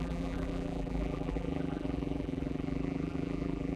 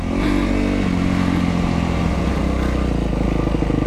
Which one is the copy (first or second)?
first